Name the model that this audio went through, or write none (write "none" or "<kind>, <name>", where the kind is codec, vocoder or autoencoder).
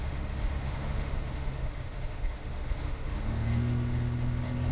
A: autoencoder, DAC-VAE